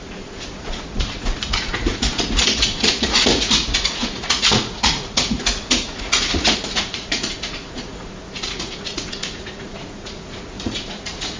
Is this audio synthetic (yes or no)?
yes